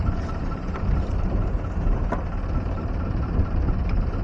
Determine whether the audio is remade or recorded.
remade